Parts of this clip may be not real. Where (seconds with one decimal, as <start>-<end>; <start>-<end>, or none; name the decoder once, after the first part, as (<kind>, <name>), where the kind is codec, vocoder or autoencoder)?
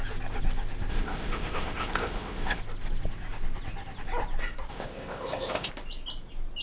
0.9-2.6 (codec, ZipCodec); 4.7-5.7